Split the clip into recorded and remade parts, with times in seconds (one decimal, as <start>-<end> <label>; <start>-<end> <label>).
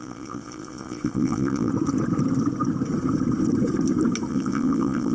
0.0-1.7 remade; 1.7-4.3 recorded; 4.3-5.1 remade